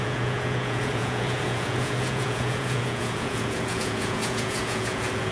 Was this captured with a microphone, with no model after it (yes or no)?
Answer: no